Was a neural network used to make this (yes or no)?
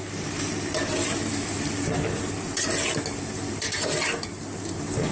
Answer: no